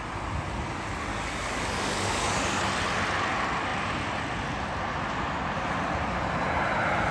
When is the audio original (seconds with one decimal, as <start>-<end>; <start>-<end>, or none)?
0.0-1.1; 2.6-7.1